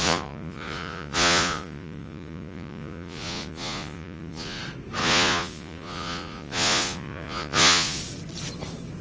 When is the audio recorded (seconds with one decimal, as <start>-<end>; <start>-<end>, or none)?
4.6-5.0; 8.0-9.0